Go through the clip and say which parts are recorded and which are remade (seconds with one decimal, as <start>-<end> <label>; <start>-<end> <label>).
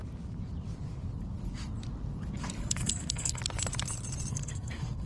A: 0.0-2.6 recorded; 2.6-3.4 remade; 3.4-4.3 recorded; 4.3-5.1 remade